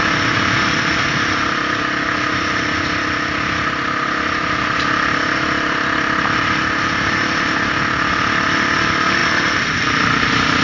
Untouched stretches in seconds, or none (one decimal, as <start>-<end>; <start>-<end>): 0.0-10.6